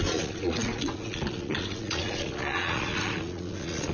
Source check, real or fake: fake